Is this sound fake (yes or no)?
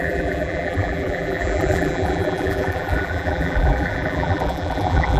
yes